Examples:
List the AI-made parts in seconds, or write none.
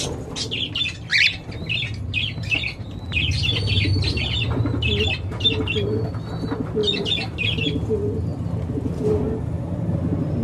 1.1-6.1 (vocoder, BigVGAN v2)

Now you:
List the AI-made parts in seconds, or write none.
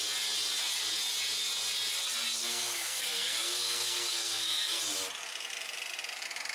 2.4-4.8 (codec, SNAC)